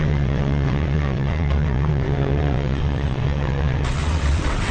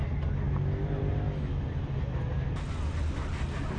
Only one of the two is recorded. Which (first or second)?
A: second